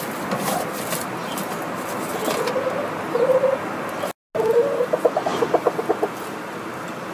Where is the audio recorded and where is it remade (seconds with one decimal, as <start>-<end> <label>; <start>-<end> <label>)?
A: 0.0-7.1 recorded